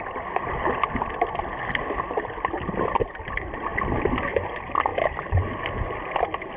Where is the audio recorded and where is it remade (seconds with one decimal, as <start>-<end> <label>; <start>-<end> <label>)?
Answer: 0.0-6.6 recorded